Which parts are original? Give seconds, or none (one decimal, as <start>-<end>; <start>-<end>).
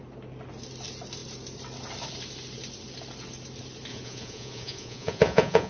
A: 0.0-3.9